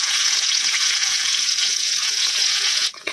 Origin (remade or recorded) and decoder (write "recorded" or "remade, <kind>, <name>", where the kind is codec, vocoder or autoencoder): remade, vocoder, Vocos